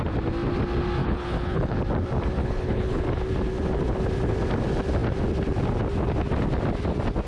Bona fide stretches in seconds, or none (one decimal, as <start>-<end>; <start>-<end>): 0.0-1.0; 1.8-2.4; 3.0-7.3